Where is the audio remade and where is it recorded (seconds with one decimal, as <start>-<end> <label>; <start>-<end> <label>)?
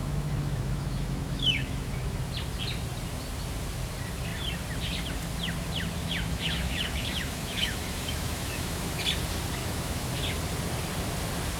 0.0-2.2 remade; 2.2-6.0 recorded; 6.0-9.0 remade; 9.0-9.6 recorded; 9.6-10.1 remade; 10.1-11.6 recorded